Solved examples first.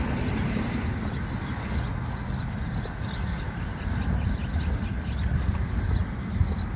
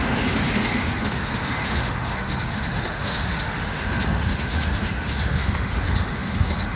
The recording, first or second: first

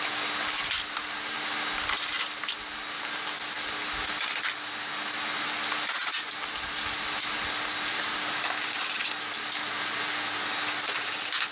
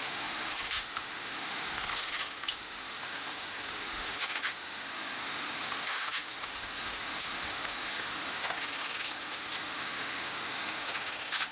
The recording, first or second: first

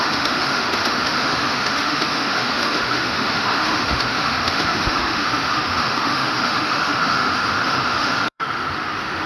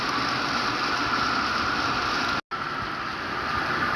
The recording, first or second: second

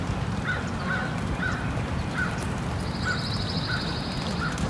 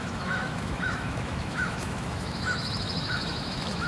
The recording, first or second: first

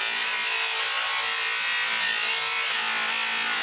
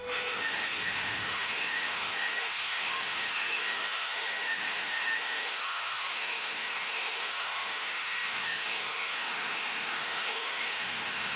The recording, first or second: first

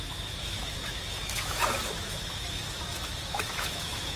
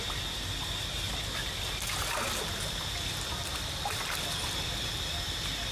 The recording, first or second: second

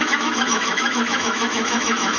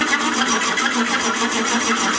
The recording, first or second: second